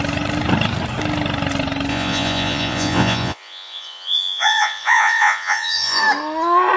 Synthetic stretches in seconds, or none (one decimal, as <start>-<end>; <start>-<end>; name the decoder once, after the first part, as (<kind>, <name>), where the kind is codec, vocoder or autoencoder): 1.9-6.0 (vocoder, Vocos)